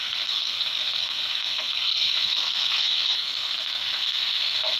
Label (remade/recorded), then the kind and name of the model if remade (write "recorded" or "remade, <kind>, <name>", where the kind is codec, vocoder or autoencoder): remade, codec, SNAC